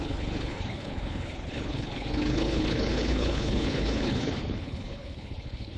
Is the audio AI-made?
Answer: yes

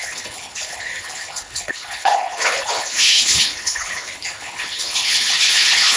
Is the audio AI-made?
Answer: yes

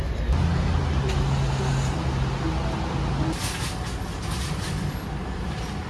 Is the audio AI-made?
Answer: no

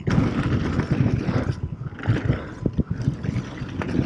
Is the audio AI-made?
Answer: no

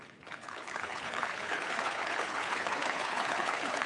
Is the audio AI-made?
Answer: yes